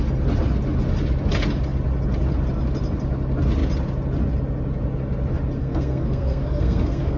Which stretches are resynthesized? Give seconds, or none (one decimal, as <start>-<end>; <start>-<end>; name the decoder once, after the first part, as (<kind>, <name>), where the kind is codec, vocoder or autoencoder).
5.6-7.2 (codec, SNAC)